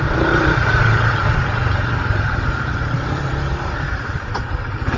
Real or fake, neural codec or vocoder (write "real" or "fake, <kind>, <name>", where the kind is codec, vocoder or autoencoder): fake, vocoder, BigVGAN v2